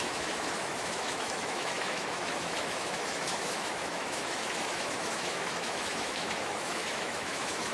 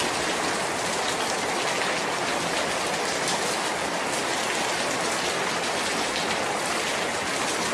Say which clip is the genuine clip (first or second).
second